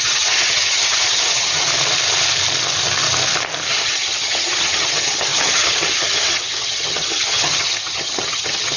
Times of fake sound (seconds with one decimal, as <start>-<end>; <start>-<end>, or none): 0.0-1.7; 3.7-8.8